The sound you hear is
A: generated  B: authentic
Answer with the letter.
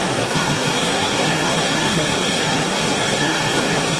A